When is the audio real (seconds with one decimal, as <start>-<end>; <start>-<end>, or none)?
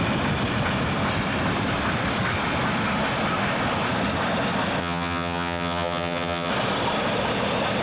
0.0-4.8; 6.5-7.8